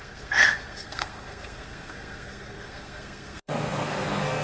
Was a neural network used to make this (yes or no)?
yes